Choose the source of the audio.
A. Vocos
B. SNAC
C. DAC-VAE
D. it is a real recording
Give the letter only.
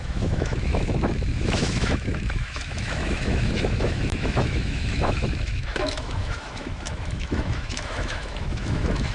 C